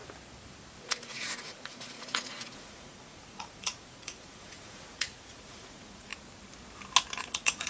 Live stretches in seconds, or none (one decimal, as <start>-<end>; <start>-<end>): 0.0-0.8; 6.1-7.2

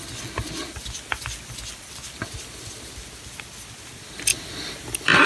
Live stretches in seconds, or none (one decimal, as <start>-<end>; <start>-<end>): 0.0-4.3

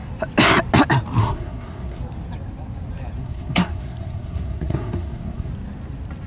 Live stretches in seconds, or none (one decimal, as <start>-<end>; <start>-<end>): 0.0-1.2; 2.0-3.2; 5.5-6.3

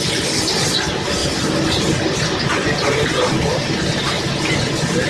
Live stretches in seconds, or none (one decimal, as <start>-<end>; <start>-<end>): 0.0-5.1

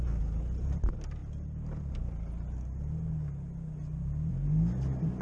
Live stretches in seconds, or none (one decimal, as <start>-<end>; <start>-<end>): 0.0-5.2

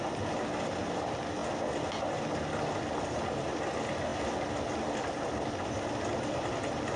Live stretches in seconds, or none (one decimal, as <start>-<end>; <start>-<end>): 0.0-7.0

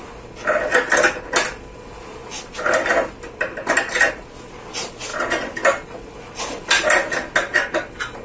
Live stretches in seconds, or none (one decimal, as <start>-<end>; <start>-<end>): 0.0-8.2

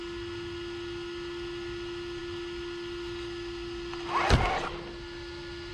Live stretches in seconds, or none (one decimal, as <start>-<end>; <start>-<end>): 0.0-5.7